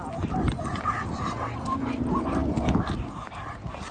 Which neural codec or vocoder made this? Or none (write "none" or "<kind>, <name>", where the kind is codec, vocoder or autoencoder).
none